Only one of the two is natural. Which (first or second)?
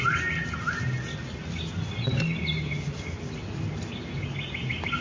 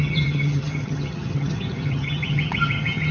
first